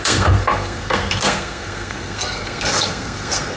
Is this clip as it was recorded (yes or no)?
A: no